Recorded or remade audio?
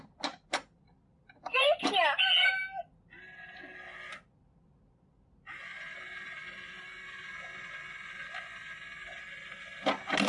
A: recorded